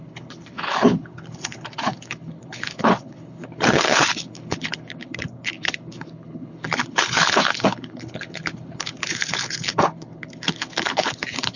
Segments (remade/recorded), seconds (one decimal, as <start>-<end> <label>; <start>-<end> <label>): 0.0-11.6 remade